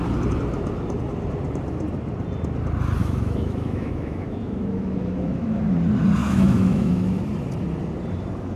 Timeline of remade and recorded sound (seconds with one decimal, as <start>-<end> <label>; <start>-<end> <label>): 0.0-3.0 recorded; 3.0-5.6 remade; 5.6-6.2 recorded; 6.2-7.2 remade; 7.2-8.6 recorded